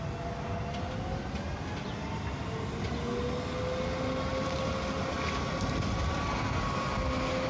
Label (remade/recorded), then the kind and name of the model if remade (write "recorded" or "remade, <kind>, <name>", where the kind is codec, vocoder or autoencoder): recorded